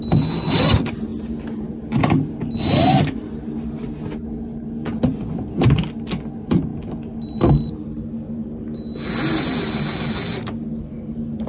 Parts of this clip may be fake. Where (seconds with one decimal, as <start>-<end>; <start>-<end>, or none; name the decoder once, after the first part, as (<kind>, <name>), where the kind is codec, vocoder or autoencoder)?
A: none